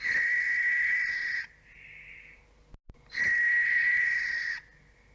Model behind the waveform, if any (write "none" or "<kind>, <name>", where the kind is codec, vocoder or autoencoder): none